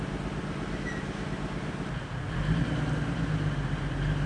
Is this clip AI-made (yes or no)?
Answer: no